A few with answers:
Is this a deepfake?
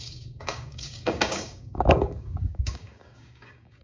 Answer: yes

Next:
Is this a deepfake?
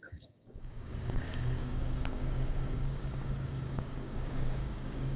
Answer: yes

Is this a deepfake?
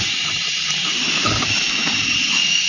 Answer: no